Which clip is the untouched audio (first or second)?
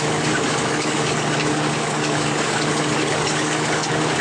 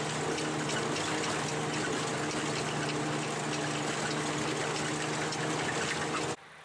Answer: second